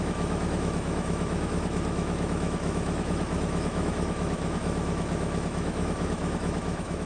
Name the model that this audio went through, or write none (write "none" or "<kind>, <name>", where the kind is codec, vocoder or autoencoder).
autoencoder, DAC-VAE